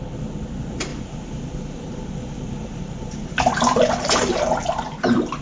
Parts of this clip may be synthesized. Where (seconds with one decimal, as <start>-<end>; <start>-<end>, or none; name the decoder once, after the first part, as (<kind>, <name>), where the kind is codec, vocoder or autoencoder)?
0.9-4.1 (vocoder, BigVGAN v2)